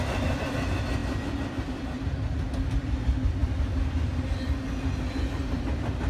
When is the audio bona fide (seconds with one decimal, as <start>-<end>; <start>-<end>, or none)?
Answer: 0.0-6.1